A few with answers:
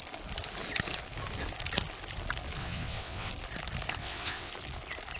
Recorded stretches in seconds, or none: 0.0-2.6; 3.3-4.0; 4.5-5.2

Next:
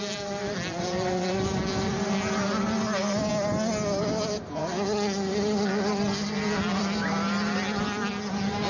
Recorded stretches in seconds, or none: 0.0-8.7